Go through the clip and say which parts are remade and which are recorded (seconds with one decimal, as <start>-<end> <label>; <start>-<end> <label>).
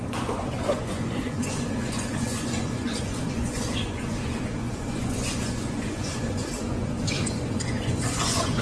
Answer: 0.0-8.6 remade